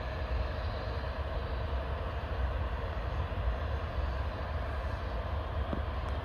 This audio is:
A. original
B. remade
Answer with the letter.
A